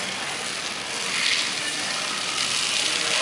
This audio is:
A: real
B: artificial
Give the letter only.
A